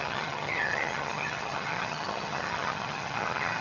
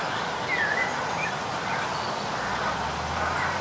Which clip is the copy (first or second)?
first